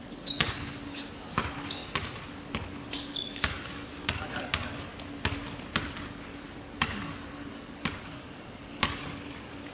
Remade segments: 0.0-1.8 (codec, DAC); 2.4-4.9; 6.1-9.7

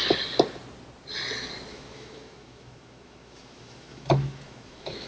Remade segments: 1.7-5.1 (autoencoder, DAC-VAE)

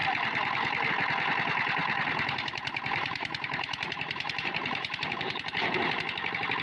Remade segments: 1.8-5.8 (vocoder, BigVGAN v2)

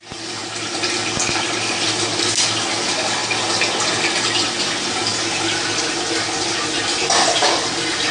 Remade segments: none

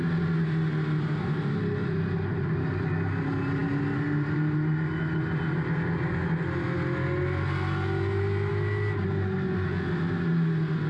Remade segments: none